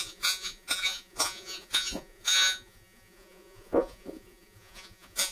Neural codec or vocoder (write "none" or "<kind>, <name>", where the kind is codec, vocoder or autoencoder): vocoder, Vocos